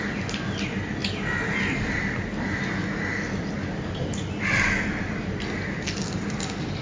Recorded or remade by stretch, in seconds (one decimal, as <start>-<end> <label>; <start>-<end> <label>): 0.0-6.8 recorded